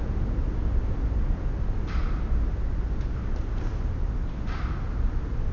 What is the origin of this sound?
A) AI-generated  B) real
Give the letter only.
B